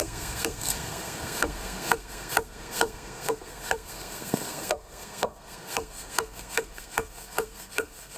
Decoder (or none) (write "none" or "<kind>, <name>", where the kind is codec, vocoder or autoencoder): codec, SNAC